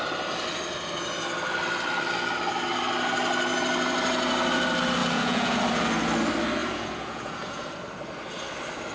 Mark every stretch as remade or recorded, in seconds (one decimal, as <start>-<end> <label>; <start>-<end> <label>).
0.0-5.0 recorded; 5.0-5.6 remade; 5.6-6.6 recorded; 6.6-7.6 remade; 7.6-8.9 recorded